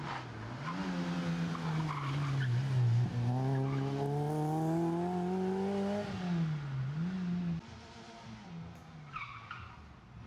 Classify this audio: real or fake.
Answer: real